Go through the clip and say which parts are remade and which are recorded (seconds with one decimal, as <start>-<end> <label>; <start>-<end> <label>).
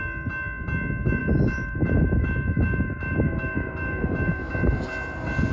0.0-1.2 recorded; 1.2-4.5 remade; 4.5-5.5 recorded